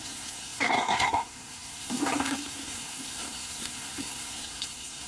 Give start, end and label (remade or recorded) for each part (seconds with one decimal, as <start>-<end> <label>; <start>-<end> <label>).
0.0-5.1 remade